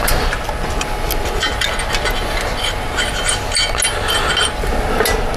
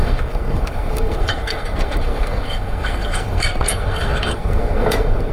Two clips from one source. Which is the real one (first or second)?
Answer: first